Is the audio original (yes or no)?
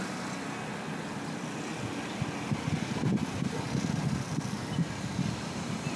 yes